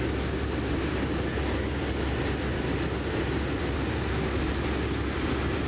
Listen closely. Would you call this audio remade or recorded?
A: recorded